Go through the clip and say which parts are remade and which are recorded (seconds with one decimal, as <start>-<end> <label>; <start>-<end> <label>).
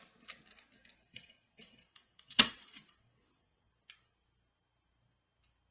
0.0-1.1 recorded; 1.1-3.7 remade; 3.7-5.7 recorded